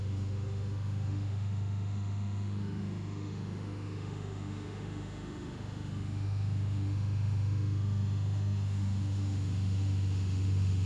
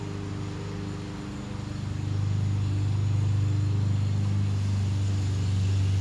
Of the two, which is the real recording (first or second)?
second